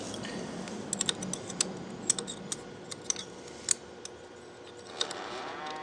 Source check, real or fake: real